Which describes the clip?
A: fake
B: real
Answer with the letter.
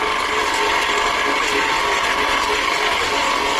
B